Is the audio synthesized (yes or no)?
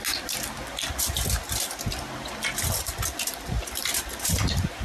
no